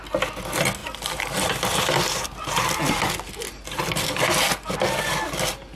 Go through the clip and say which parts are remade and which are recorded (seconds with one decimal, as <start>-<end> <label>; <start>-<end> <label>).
0.0-0.8 recorded; 0.8-1.8 remade; 1.8-5.8 recorded